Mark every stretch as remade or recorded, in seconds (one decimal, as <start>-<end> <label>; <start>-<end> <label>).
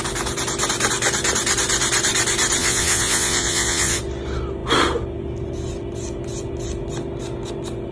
0.0-2.6 recorded; 2.6-4.0 remade; 4.0-7.9 recorded